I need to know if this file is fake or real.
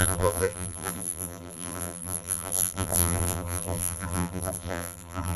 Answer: fake